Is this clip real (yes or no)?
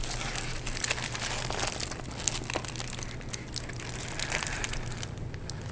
yes